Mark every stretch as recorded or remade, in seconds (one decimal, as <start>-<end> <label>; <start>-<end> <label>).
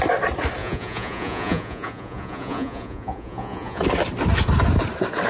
0.0-0.6 recorded; 0.6-3.8 remade; 3.8-5.3 recorded